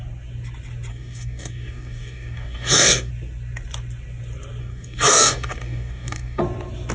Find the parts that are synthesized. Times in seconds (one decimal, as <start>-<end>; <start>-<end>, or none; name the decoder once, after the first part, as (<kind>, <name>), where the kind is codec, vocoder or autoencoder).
0.9-3.1 (codec, DAC); 4.6-6.4